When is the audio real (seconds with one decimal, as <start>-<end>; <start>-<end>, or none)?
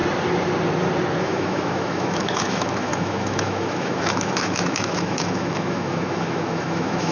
0.0-1.2